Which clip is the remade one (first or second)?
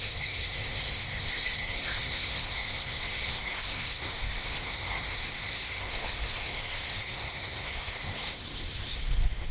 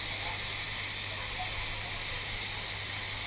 first